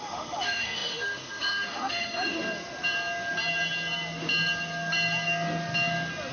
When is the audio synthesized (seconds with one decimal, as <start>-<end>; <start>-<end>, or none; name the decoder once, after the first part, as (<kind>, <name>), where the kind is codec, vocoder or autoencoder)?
0.0-2.4 (autoencoder, DAC-VAE)

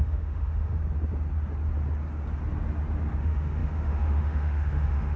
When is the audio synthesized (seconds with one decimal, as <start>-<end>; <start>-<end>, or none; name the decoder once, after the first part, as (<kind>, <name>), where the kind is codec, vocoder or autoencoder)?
0.0-0.8 (autoencoder, DAC-VAE); 3.2-5.2